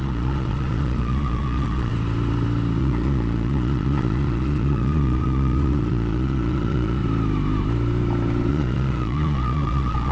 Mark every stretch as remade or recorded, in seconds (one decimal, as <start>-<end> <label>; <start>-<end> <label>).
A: 0.0-1.9 remade; 1.9-2.8 recorded; 2.8-7.0 remade; 7.0-8.5 recorded; 8.5-10.1 remade